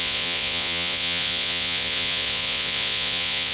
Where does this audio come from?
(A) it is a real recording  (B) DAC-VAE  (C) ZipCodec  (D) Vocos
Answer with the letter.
D